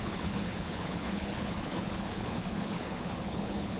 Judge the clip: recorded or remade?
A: remade